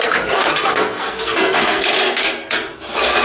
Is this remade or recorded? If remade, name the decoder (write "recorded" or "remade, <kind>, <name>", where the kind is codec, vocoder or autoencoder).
remade, codec, SNAC